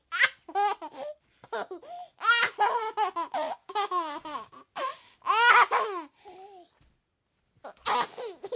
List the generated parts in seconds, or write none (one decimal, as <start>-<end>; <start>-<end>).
3.6-4.5